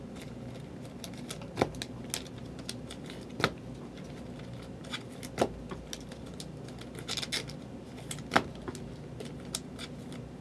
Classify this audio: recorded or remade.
recorded